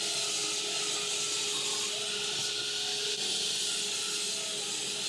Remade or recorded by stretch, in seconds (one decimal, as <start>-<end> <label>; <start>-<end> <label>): 0.0-5.1 recorded